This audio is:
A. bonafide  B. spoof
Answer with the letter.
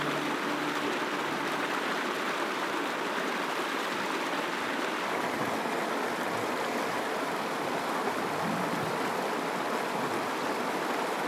A